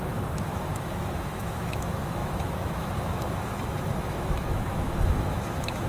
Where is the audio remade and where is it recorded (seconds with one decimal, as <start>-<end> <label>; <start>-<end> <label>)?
0.0-5.9 remade

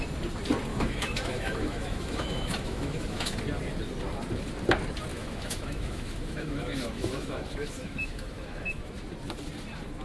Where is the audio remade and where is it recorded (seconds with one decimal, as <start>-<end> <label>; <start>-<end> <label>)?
0.0-0.7 recorded; 0.7-3.4 remade; 3.4-5.1 recorded; 5.1-8.9 remade; 8.9-10.0 recorded

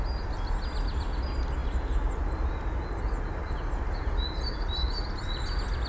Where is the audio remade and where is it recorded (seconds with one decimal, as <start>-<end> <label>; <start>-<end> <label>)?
0.0-5.9 recorded

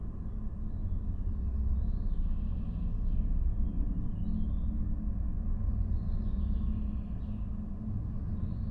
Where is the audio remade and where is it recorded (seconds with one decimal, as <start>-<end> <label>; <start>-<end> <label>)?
0.0-5.3 recorded; 5.3-6.4 remade; 6.4-8.7 recorded

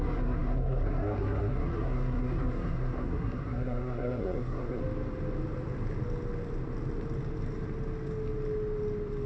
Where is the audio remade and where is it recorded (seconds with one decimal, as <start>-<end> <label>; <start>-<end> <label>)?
0.0-4.8 remade; 4.8-9.3 recorded